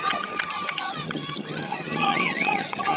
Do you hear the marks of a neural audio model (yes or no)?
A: yes